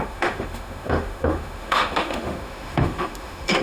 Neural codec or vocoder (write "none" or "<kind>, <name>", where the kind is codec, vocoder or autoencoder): autoencoder, DAC-VAE